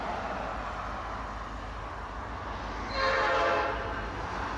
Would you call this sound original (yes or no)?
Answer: yes